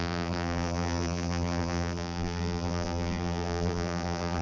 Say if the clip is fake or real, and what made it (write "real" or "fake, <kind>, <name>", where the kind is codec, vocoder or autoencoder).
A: fake, vocoder, BigVGAN v2